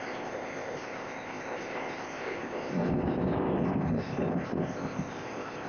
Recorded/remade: remade